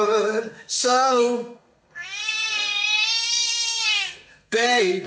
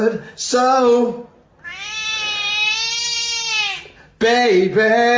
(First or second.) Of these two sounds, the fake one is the first